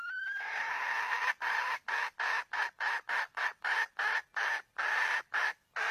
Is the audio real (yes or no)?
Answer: yes